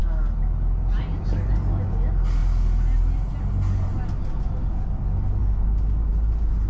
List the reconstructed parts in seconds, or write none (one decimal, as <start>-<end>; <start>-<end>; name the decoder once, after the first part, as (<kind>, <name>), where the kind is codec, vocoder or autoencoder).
none